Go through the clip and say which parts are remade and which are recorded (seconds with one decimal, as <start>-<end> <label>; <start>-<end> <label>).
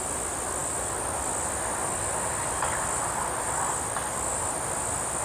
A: 0.0-5.2 recorded